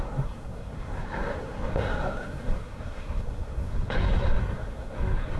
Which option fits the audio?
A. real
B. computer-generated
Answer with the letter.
B